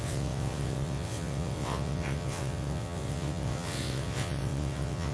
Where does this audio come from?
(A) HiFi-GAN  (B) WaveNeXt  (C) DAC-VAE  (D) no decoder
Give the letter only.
B